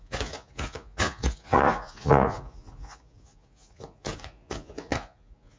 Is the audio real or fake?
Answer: fake